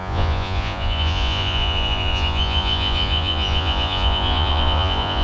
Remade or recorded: remade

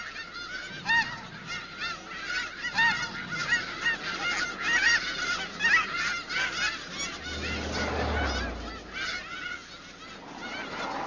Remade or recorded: recorded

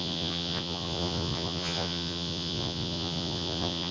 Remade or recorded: remade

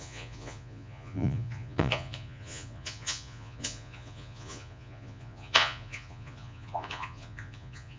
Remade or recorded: remade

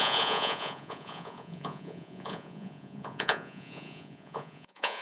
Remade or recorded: remade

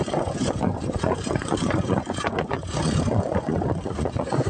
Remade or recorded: remade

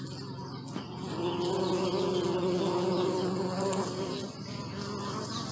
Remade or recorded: recorded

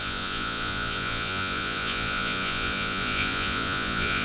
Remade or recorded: remade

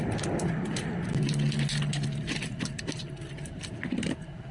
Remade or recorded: recorded